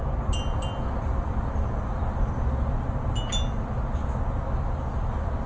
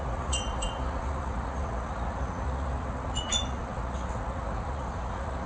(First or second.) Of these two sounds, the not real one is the second